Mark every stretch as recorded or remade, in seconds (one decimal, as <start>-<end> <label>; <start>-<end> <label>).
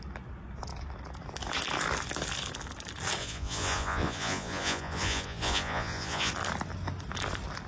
0.0-3.2 recorded; 3.2-6.3 remade; 6.3-7.7 recorded